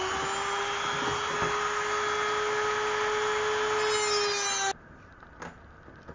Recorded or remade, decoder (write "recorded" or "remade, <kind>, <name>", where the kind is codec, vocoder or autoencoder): recorded